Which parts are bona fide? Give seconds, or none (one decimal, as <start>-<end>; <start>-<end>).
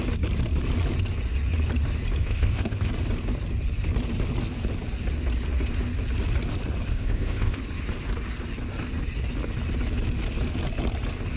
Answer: 0.0-2.2; 2.9-6.9; 7.6-11.4